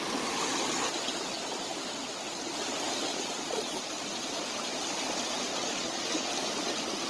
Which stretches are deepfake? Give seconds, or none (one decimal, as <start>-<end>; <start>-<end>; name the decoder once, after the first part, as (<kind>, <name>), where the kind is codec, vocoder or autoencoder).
3.1-3.8 (vocoder, Vocos); 5.5-6.3